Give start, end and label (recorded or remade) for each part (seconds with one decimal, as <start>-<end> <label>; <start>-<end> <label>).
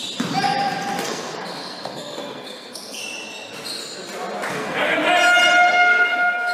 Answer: 0.0-1.0 recorded; 1.0-3.0 remade; 3.0-4.5 recorded; 4.5-5.0 remade; 5.0-5.7 recorded; 5.7-6.5 remade